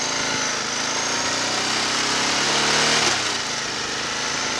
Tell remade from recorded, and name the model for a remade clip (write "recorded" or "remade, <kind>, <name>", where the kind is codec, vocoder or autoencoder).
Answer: recorded